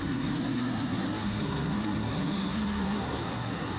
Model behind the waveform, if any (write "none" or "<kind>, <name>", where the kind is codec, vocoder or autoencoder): codec, SNAC